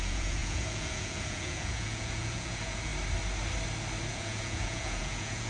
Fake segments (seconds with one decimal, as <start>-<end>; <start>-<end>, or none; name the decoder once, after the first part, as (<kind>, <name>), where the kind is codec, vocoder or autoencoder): 0.0-2.9 (vocoder, Vocos); 4.1-5.5

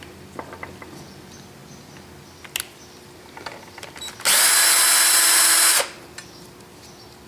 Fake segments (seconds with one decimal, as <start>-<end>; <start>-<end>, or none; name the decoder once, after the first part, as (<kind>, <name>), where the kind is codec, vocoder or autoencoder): none

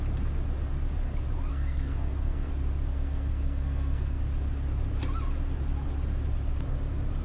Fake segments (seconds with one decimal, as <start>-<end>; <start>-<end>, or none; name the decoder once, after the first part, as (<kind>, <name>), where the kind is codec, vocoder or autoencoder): 1.5-2.5 (codec, SNAC); 2.9-4.2

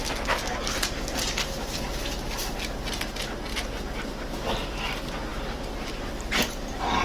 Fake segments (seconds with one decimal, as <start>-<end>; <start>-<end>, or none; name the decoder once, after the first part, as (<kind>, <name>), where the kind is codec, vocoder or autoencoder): none